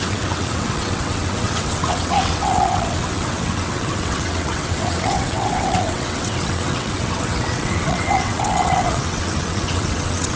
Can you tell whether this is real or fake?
fake